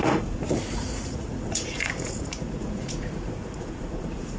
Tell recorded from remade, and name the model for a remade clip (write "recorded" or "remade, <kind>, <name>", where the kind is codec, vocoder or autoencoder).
remade, vocoder, Vocos